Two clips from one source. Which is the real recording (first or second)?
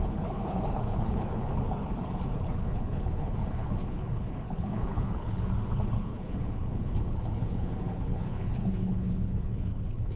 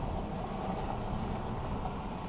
second